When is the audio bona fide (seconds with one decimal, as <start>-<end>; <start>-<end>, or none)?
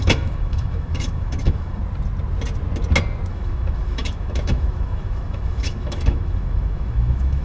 1.8-3.3